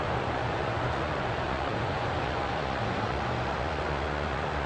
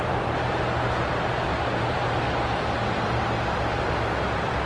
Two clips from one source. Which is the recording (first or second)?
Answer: second